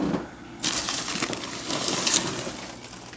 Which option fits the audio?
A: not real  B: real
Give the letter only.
B